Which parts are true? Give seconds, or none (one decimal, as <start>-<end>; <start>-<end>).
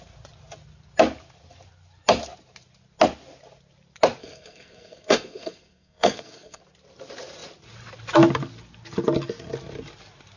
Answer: 0.0-4.2; 6.6-10.4